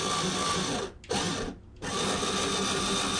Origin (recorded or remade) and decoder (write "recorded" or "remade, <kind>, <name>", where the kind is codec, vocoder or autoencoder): recorded